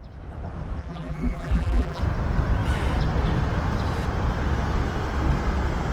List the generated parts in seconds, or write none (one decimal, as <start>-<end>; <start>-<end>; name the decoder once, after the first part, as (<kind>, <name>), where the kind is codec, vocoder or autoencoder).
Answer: 0.8-2.0 (vocoder, BigVGAN v2)